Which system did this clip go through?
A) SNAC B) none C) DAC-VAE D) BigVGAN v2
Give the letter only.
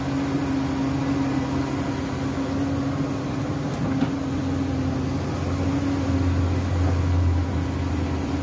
B